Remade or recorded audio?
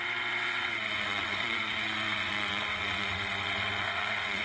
remade